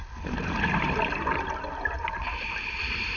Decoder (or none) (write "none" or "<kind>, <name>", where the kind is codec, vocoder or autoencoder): none